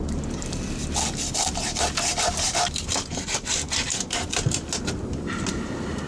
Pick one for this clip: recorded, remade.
recorded